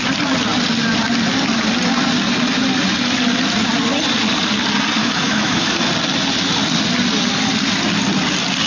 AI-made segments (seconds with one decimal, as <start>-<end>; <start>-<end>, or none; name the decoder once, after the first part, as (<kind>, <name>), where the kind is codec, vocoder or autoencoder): 5.0-5.7 (autoencoder, DAC-VAE)